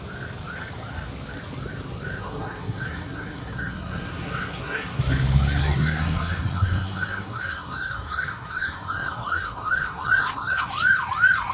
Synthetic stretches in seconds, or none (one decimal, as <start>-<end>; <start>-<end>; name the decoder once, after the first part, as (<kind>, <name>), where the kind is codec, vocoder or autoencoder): 2.2-5.0 (codec, SNAC); 5.6-10.6